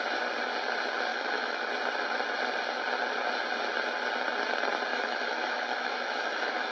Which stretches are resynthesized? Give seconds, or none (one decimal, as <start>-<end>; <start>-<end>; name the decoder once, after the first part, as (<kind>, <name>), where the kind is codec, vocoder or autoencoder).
1.1-1.7 (autoencoder, DAC-VAE); 4.9-6.7